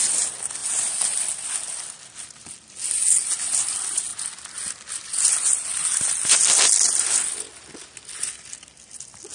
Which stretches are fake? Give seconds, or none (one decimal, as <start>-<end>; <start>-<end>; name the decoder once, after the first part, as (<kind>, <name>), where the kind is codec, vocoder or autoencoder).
none